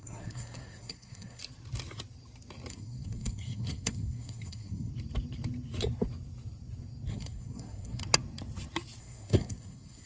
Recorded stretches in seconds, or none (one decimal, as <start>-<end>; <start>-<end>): 1.4-2.7; 4.9-7.1; 8.0-9.0